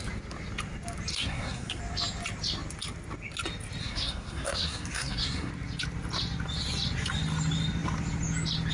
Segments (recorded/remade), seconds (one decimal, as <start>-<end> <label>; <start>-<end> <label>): 0.0-1.1 recorded; 1.1-1.8 remade; 1.8-3.8 recorded; 3.8-5.5 remade; 5.5-8.7 recorded